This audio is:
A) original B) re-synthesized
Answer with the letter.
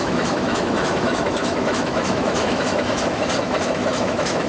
B